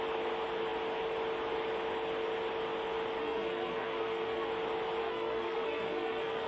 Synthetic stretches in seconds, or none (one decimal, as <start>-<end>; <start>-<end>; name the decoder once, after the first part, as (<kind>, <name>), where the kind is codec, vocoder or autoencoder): 3.2-4.5 (codec, SNAC); 5.0-6.5